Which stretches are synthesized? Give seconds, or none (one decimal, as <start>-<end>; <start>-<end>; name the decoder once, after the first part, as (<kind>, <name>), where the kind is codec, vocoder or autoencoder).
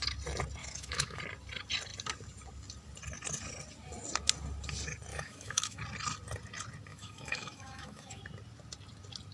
0.6-1.2 (autoencoder, DAC-VAE); 5.1-5.8; 6.9-8.2